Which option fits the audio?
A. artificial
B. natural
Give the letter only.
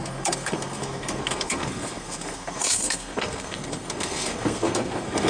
A